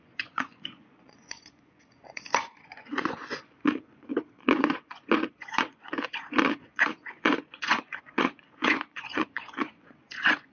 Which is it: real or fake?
fake